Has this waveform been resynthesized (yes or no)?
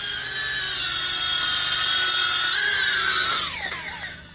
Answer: no